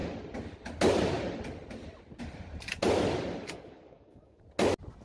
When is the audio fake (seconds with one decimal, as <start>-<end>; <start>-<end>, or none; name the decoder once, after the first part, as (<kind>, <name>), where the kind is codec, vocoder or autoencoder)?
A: 3.4-4.4 (codec, DAC)